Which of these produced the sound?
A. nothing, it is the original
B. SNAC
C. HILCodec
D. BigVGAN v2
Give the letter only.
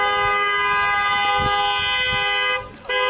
A